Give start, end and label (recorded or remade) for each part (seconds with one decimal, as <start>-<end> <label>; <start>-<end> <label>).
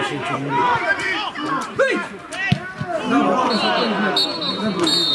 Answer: 0.0-2.0 remade; 2.0-5.1 recorded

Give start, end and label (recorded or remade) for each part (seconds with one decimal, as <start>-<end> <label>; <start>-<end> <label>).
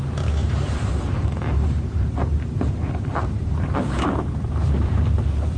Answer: 0.0-5.6 remade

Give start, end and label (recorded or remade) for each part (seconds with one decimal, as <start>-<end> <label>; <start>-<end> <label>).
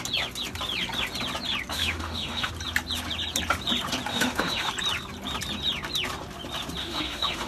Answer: 0.0-1.7 recorded; 1.7-2.5 remade; 2.5-4.1 recorded; 4.1-4.7 remade; 4.7-6.8 recorded; 6.8-7.5 remade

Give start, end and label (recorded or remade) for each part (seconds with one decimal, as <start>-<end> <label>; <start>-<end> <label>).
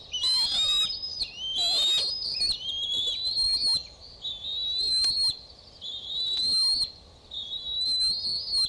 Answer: 0.0-8.7 recorded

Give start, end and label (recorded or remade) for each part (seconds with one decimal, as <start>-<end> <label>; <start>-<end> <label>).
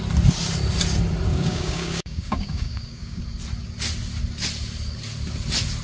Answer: 0.0-1.3 recorded; 1.3-3.2 remade; 3.2-5.8 recorded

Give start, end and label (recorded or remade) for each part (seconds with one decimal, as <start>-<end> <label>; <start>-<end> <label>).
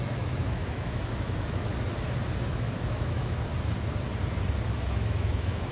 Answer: 0.0-1.7 remade; 1.7-2.5 recorded; 2.5-3.5 remade; 3.5-4.6 recorded; 4.6-5.7 remade